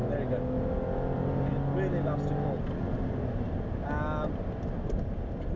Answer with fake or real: real